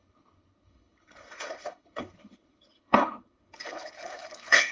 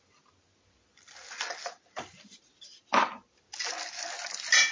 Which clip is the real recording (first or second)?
second